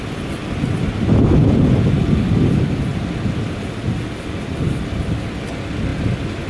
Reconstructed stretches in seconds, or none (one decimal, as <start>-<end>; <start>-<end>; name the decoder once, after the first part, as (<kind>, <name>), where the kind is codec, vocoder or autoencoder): none